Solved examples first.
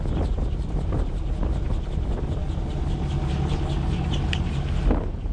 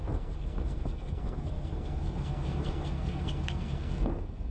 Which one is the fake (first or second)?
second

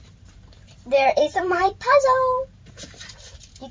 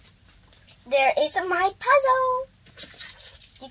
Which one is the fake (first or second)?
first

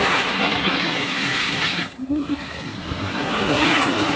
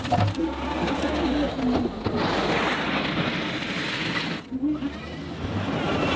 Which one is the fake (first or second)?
first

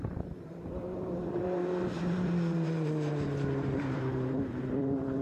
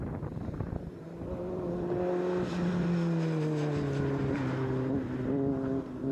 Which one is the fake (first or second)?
first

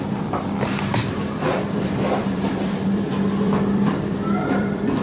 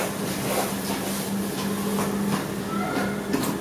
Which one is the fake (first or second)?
first